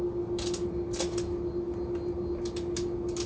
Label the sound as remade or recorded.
recorded